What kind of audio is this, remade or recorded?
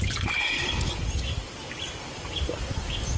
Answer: recorded